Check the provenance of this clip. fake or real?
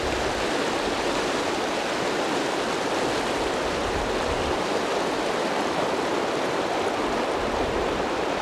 real